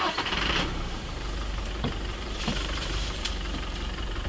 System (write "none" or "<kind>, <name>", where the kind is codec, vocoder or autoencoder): vocoder, BigVGAN v2